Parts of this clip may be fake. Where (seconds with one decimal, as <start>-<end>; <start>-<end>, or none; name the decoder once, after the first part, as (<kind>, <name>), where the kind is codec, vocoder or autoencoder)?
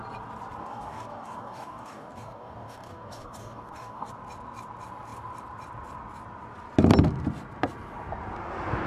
0.6-4.1 (codec, DAC)